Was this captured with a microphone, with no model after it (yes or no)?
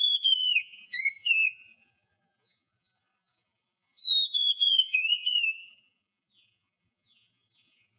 no